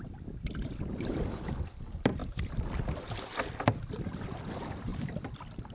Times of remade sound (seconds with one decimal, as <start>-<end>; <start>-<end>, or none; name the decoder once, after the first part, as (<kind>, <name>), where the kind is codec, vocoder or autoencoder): 0.0-4.9 (vocoder, BigVGAN v2)